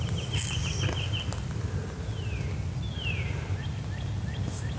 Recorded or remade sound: recorded